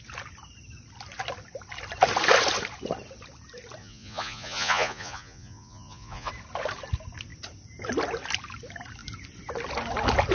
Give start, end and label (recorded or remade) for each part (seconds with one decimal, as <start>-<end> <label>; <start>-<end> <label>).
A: 0.0-3.8 recorded; 3.8-6.3 remade; 6.3-10.3 recorded